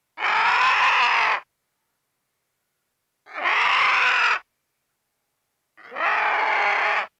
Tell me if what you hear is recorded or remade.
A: recorded